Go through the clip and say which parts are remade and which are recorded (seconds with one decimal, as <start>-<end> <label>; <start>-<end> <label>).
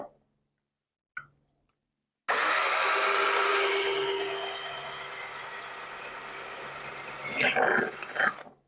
0.0-8.7 recorded